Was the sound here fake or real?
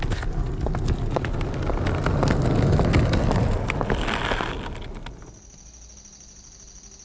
real